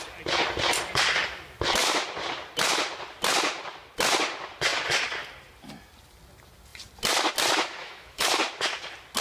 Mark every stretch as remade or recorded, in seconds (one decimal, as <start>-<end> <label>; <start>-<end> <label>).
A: 0.0-7.8 recorded; 7.8-8.3 remade; 8.3-9.2 recorded